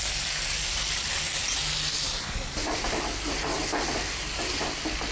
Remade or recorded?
recorded